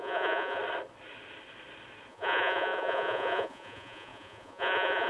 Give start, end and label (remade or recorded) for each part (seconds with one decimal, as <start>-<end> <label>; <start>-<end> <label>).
0.0-0.6 remade; 0.6-2.1 recorded; 2.1-5.1 remade